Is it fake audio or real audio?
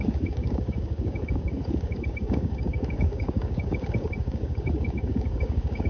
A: fake